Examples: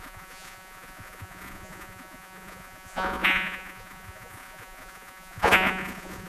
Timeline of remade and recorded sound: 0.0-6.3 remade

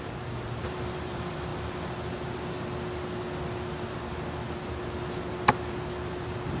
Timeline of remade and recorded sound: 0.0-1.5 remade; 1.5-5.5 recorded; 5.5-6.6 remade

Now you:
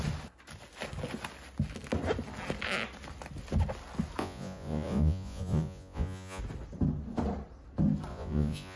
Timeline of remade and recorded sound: 0.0-4.2 recorded; 4.2-6.4 remade; 6.4-8.1 recorded; 8.1-8.8 remade